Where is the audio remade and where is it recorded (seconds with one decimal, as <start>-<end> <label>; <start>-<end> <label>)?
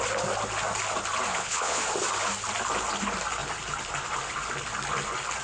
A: 0.0-1.3 recorded; 1.3-1.8 remade; 1.8-5.4 recorded